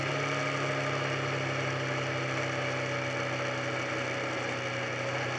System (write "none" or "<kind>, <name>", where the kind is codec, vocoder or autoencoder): none